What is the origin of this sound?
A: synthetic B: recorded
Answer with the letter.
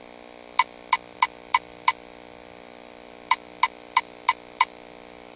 B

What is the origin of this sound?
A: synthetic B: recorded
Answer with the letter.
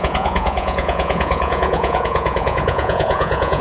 A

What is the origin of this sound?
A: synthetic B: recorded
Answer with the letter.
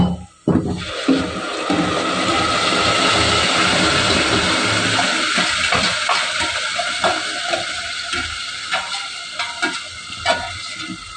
B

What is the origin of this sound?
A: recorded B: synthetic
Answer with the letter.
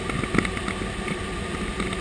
A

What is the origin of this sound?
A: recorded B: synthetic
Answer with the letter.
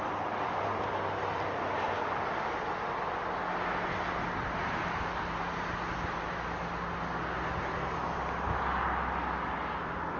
A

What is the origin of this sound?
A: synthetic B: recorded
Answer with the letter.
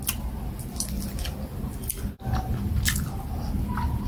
B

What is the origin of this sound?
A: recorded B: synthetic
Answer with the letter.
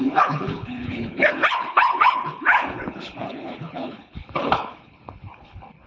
B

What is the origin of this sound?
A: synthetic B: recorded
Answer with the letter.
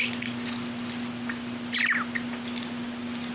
B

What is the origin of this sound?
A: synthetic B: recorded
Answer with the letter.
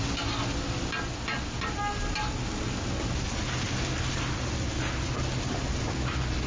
B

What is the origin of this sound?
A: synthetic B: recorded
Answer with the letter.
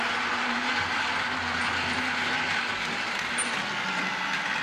B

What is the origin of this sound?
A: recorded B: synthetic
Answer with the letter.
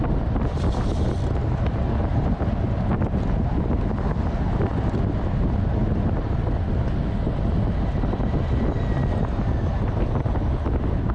A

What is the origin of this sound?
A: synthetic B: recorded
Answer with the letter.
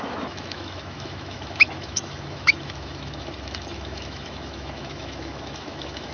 A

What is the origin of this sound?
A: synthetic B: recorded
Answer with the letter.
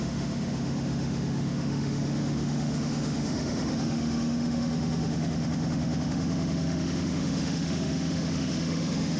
A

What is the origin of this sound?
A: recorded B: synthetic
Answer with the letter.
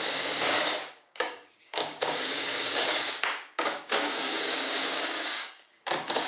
B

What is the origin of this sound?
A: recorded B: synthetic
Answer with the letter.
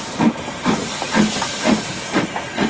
A